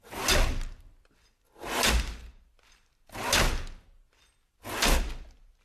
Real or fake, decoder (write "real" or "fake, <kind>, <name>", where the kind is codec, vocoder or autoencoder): real